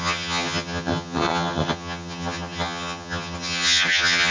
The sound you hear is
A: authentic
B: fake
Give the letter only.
B